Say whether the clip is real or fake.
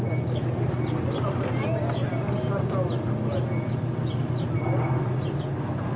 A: real